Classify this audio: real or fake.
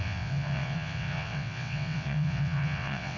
fake